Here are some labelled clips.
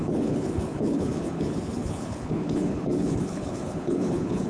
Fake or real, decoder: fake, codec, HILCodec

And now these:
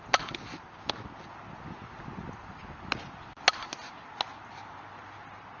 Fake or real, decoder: real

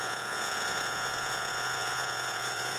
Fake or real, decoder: fake, vocoder, Vocos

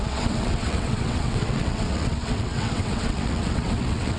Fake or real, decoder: fake, vocoder, WaveNeXt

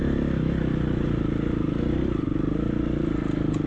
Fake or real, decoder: real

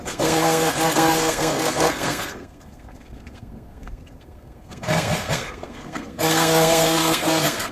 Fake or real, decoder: fake, codec, SNAC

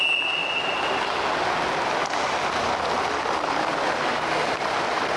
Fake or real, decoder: real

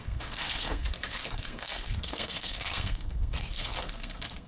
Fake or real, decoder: fake, codec, SNAC